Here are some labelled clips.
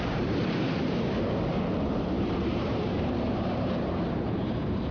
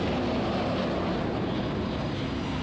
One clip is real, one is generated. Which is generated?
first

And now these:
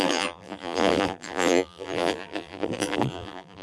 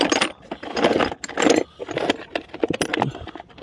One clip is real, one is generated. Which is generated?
first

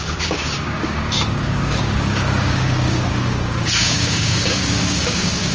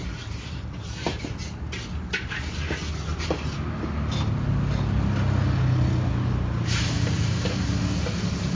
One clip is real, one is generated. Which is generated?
first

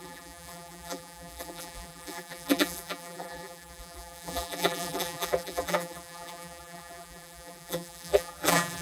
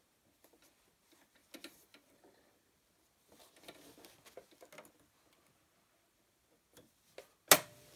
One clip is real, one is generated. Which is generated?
first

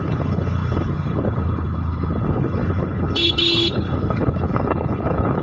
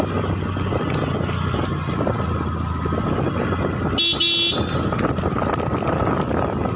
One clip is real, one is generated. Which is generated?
first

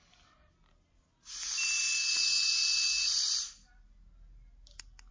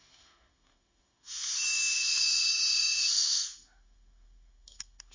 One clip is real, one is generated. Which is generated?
second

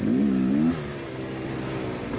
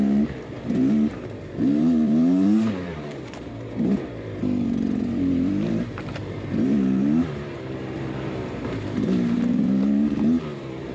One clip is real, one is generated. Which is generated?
second